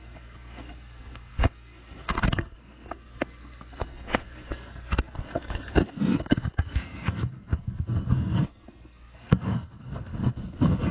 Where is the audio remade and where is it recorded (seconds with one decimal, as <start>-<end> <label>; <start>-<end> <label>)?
0.0-10.9 remade

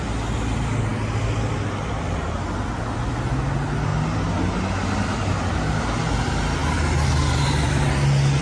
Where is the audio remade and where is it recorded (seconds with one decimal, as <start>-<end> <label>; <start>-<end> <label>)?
0.0-8.4 recorded

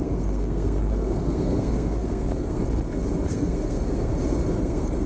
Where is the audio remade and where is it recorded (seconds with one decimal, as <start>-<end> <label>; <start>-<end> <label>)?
0.0-2.6 remade; 2.6-3.3 recorded; 3.3-4.1 remade; 4.1-4.6 recorded; 4.6-5.1 remade

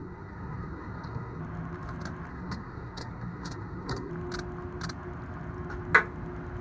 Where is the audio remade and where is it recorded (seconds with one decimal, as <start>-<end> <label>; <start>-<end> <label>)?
0.0-1.4 remade; 1.4-2.3 recorded; 2.3-4.1 remade; 4.1-6.6 recorded

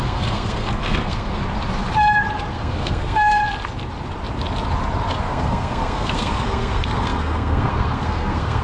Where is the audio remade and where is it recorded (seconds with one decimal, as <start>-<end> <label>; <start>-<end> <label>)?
0.0-1.4 remade; 1.4-2.5 recorded; 2.5-3.4 remade; 3.4-5.2 recorded; 5.2-8.6 remade

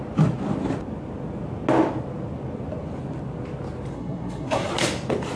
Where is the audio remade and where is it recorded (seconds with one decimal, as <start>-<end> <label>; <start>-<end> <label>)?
0.0-3.9 recorded; 3.9-4.7 remade; 4.7-5.4 recorded